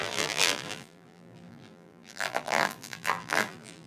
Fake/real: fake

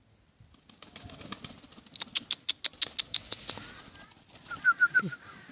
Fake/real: real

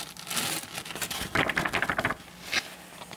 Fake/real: real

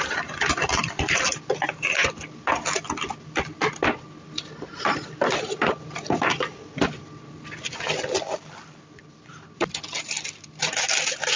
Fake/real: real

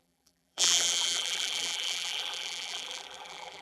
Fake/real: fake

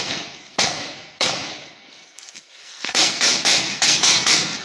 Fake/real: fake